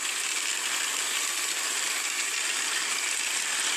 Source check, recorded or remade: recorded